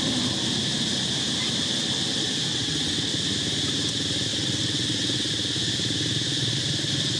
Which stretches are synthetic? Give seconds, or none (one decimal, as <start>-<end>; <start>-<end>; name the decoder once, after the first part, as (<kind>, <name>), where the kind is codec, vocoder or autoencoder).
2.5-3.1 (vocoder, WaveNeXt); 4.3-5.3